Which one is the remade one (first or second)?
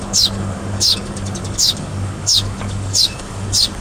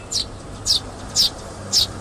first